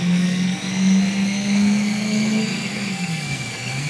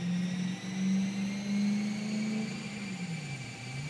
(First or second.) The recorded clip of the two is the second